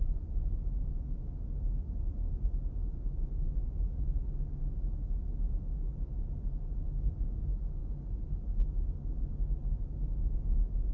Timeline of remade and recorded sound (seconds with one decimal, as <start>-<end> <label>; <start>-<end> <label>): 0.0-10.9 recorded